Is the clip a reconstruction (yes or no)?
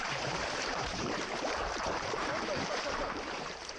yes